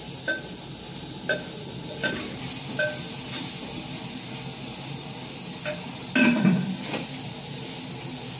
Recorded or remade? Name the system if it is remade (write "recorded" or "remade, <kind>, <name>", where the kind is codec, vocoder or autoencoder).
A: recorded